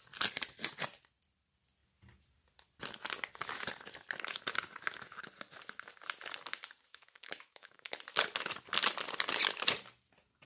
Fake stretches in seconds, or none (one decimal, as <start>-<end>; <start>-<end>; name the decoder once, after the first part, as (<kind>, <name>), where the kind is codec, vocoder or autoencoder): 6.9-8.0 (autoencoder, DAC-VAE)